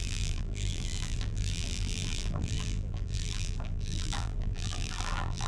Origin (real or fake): fake